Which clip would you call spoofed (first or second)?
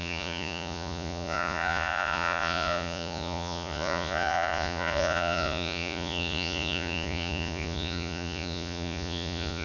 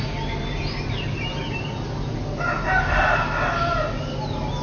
first